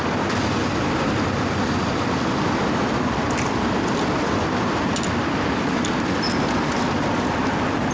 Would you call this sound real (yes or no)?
no